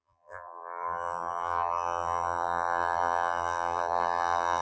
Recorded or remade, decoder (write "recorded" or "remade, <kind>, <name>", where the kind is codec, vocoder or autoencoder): remade, vocoder, BigVGAN v2